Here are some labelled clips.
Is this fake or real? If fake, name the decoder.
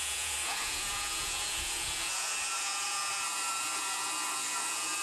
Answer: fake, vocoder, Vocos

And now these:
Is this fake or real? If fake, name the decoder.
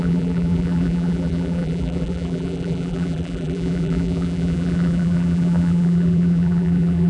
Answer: fake, vocoder, BigVGAN v2